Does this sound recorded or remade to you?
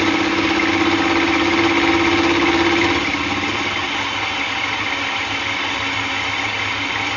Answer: recorded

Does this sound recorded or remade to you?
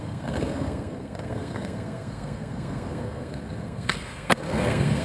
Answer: remade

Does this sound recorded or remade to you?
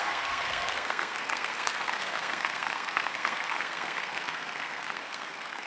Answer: remade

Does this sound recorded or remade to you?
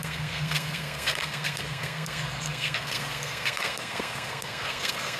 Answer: remade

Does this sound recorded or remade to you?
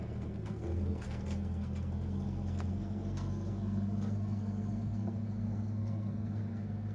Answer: remade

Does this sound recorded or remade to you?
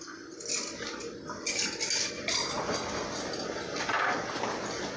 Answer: recorded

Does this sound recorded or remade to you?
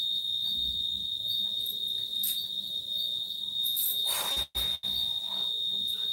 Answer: recorded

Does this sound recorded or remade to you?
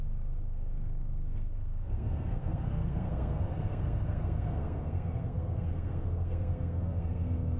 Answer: remade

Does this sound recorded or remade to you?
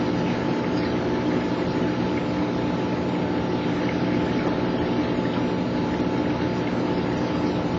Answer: recorded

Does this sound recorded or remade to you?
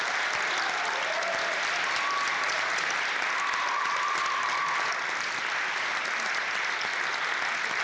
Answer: recorded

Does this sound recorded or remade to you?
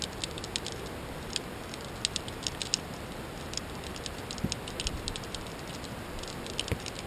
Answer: recorded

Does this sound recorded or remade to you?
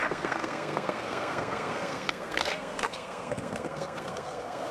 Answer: remade